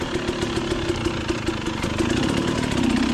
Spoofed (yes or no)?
no